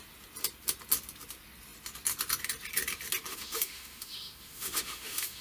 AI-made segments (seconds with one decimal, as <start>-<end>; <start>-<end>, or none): 3.3-5.4